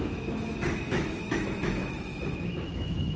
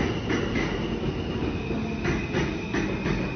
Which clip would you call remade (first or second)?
first